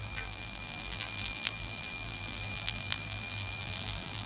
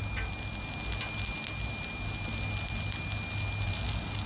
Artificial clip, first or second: first